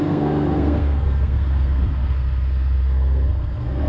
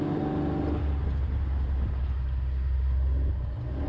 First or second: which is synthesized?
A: first